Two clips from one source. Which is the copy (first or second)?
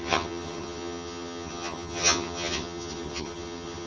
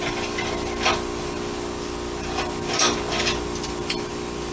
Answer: first